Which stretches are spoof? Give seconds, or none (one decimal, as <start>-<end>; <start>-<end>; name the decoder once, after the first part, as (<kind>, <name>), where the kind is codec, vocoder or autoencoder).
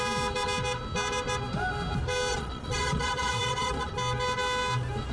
2.3-3.9 (vocoder, Vocos)